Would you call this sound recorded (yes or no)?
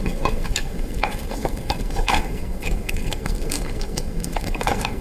no